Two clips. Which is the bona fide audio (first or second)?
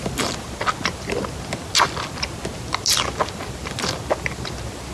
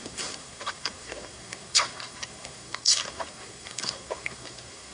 first